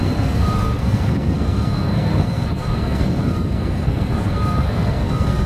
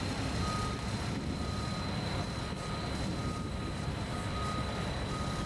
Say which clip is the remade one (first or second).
first